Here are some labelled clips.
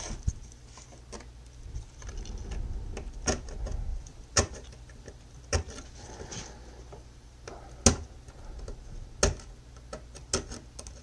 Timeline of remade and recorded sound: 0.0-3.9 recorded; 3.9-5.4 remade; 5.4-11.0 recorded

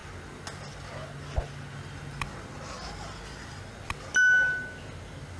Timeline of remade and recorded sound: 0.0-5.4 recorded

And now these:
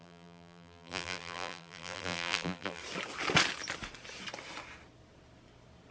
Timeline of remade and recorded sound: 0.0-2.8 remade; 2.8-5.9 recorded